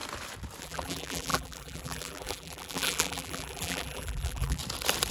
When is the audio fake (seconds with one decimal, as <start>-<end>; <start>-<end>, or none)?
0.6-4.6